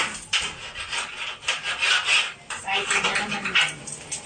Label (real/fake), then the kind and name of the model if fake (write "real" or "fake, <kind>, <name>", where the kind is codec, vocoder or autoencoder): real